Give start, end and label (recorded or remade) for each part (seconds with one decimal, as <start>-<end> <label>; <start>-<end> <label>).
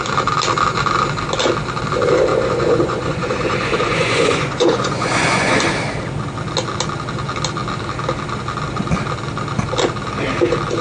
0.0-2.3 recorded; 2.3-5.6 remade; 5.6-10.8 recorded